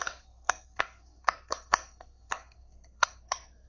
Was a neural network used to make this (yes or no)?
yes